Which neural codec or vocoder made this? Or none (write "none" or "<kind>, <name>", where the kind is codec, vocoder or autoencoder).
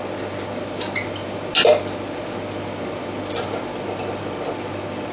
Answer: none